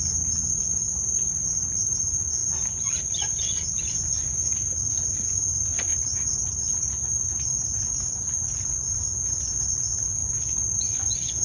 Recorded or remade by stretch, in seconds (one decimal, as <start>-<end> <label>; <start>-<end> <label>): 0.0-11.4 recorded